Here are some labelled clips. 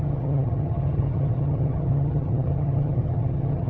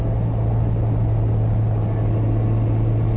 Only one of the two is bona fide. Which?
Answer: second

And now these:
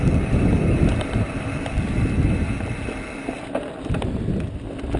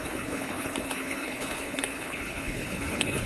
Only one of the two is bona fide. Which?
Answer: first